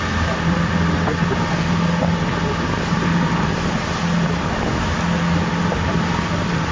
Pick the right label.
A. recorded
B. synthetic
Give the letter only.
A